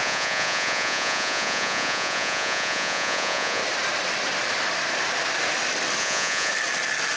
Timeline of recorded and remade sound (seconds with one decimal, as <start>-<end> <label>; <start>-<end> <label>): 0.0-3.6 remade; 3.6-6.0 recorded; 6.0-6.5 remade; 6.5-7.2 recorded